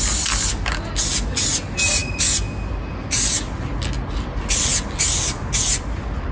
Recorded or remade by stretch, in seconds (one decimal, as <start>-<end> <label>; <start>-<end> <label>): 0.0-6.3 recorded